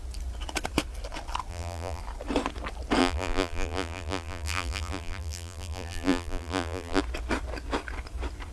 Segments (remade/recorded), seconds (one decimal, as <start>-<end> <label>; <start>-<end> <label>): 0.0-1.5 recorded; 1.5-2.0 remade; 2.0-3.0 recorded; 3.0-7.0 remade; 7.0-8.5 recorded